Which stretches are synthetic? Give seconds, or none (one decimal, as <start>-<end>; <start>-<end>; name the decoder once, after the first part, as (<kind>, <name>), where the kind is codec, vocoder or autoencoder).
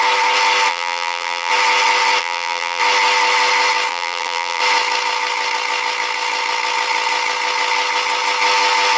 0.7-1.5 (vocoder, BigVGAN v2); 2.2-2.8; 3.9-4.6